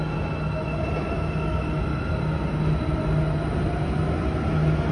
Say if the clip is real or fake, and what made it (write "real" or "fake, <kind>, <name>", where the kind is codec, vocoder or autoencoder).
real